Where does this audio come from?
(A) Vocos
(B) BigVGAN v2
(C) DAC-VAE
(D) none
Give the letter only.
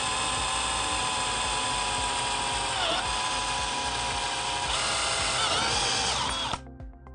D